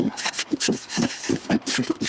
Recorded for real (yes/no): no